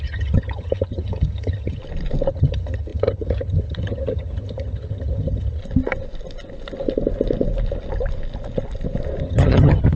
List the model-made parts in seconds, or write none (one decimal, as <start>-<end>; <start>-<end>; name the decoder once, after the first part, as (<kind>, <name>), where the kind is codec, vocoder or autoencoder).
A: 0.0-1.8 (vocoder, HiFi-GAN); 2.3-5.6; 9.2-10.0